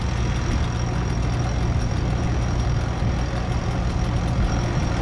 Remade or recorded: recorded